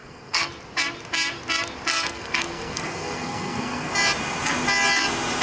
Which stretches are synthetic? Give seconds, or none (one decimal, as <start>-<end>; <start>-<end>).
0.0-0.5; 1.9-3.9